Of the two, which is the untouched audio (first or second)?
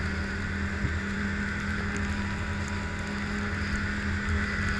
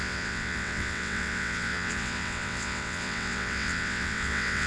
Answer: first